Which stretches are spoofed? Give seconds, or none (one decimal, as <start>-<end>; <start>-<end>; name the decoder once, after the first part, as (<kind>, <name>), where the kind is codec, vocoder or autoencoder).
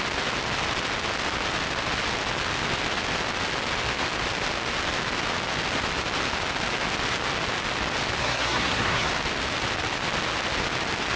8.2-9.1 (codec, SNAC)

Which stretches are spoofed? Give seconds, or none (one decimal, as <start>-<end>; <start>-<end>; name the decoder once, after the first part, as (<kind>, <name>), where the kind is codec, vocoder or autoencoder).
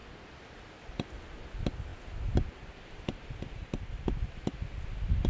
none